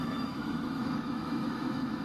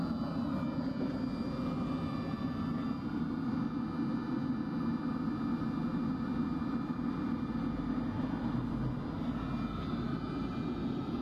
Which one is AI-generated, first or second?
first